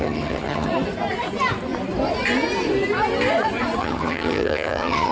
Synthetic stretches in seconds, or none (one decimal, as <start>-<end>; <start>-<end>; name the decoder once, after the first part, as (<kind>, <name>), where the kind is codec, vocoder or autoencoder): 0.0-0.7 (vocoder, HiFi-GAN); 3.8-5.1